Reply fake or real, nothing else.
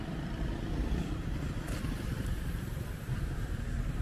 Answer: fake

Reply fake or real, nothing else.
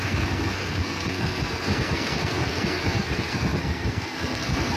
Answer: fake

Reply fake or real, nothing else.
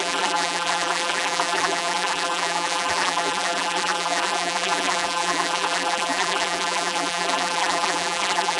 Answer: fake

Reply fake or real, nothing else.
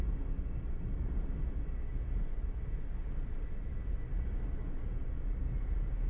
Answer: real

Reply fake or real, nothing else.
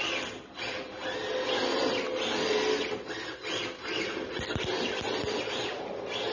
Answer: real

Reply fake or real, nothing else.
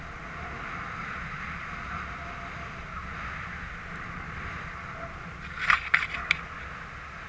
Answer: real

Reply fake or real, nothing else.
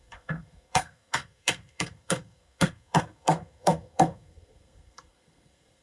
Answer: fake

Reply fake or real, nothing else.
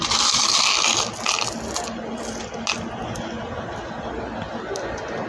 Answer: real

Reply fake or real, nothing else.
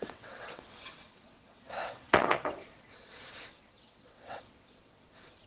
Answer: fake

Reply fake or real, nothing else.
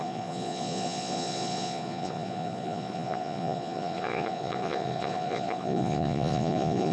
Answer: fake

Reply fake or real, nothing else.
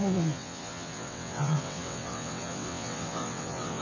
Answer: fake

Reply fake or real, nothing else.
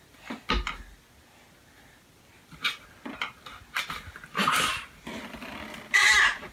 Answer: real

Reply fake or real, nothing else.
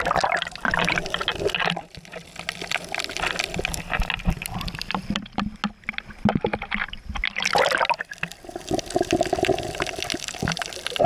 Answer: real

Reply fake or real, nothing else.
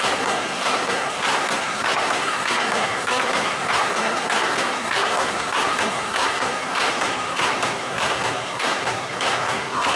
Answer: fake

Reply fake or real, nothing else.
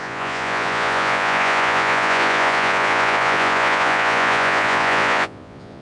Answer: fake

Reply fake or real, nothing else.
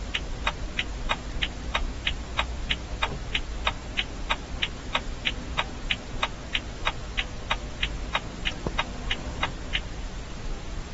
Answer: real